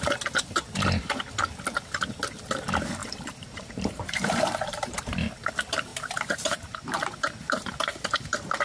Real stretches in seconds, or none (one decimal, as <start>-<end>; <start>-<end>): 0.0-3.0; 5.0-5.9

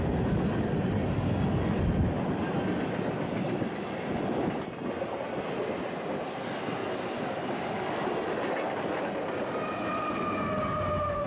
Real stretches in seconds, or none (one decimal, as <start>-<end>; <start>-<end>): 0.0-11.3

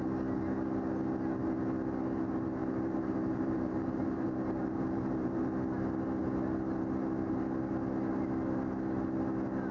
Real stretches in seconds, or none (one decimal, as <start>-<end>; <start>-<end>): 0.0-2.6; 5.4-9.7

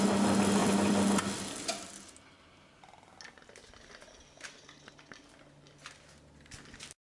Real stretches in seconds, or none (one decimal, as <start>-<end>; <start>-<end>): 0.0-0.6; 1.9-7.0

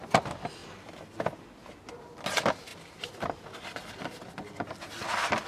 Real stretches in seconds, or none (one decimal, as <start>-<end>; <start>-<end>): 0.0-5.5

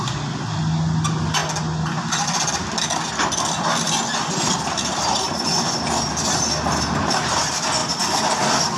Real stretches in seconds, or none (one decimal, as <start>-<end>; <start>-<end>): 0.0-8.8

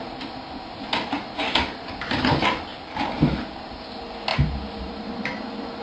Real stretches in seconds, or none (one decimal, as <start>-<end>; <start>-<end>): 0.0-2.7; 3.6-4.3; 5.0-5.8